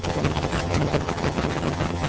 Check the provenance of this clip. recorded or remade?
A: remade